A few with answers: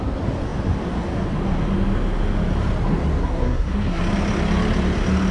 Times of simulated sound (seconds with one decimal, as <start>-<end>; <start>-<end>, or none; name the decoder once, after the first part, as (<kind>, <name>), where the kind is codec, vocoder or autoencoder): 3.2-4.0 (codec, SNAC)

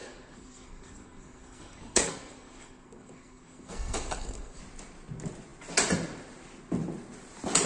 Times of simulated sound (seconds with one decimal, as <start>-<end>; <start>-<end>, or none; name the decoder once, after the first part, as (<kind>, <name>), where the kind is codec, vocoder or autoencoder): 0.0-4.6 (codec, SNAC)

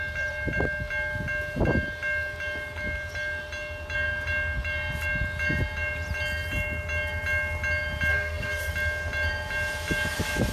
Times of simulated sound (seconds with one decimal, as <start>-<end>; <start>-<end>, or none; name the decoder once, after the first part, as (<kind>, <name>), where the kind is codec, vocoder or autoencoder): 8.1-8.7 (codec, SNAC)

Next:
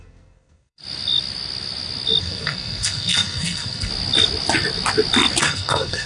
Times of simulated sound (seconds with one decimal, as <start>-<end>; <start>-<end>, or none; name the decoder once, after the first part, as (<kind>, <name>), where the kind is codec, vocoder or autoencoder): 0.0-0.8 (codec, SNAC); 2.2-3.9; 5.4-6.1

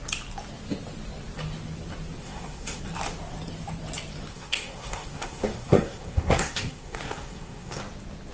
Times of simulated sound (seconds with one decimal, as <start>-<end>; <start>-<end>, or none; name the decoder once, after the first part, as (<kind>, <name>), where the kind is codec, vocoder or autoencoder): 2.2-2.8 (codec, SNAC); 4.3-7.8